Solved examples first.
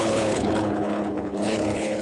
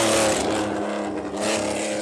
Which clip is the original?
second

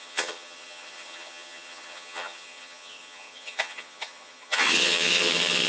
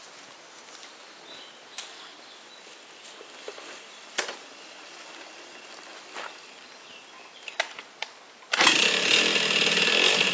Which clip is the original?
second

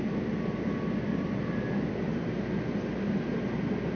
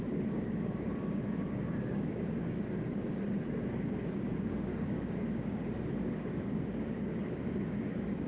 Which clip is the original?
first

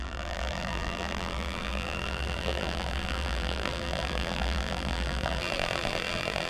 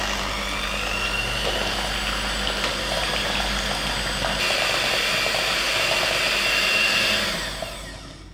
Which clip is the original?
second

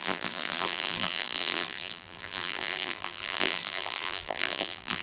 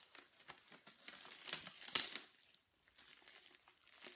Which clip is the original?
second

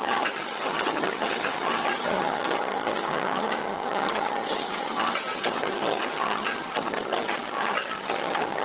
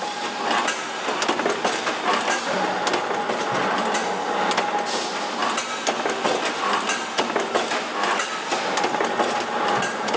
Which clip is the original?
second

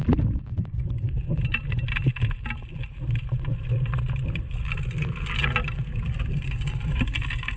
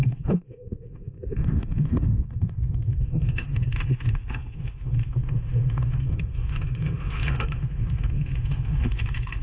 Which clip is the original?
first